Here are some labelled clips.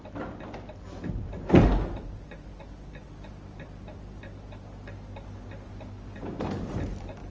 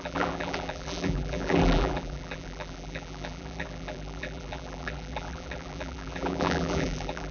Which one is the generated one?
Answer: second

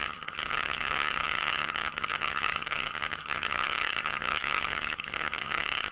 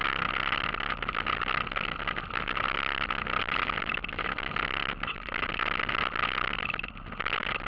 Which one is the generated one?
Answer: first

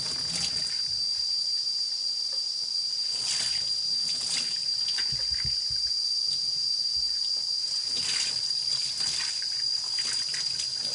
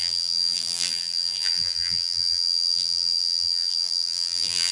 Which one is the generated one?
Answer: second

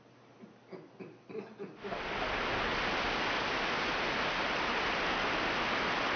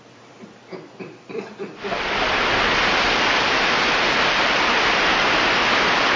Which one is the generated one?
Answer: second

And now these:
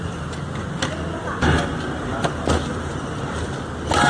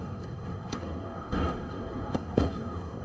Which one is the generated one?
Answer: second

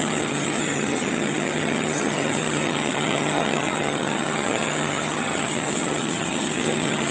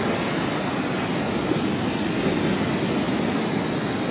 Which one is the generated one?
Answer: first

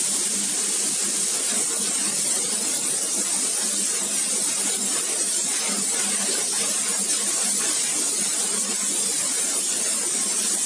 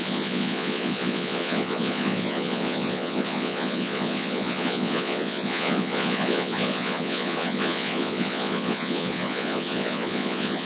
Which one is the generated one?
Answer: second